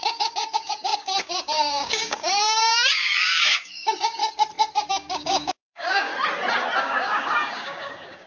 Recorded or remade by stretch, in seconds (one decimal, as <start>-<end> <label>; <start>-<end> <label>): 0.0-4.2 remade; 4.2-4.9 recorded; 4.9-6.1 remade; 6.1-6.8 recorded; 6.8-8.3 remade